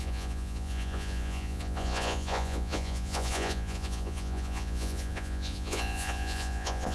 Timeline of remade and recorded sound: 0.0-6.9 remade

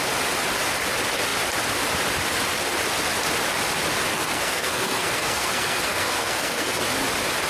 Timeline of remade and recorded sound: 0.0-4.1 recorded; 4.1-6.8 remade; 6.8-7.5 recorded

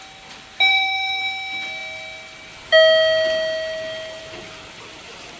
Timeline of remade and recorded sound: 0.0-0.7 recorded; 0.7-1.2 remade; 1.2-5.4 recorded

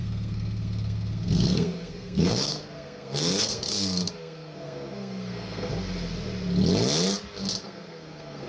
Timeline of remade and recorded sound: 0.0-5.7 remade; 5.7-7.6 recorded; 7.6-8.5 remade

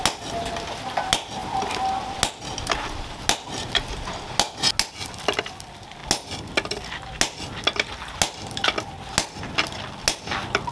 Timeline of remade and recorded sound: 0.0-10.7 recorded